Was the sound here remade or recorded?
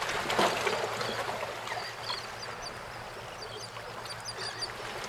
recorded